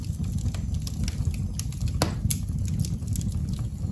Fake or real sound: real